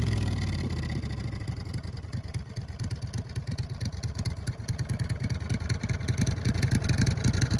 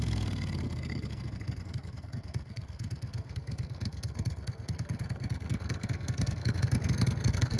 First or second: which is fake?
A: second